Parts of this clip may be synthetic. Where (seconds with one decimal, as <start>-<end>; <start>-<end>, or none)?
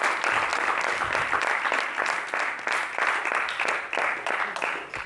none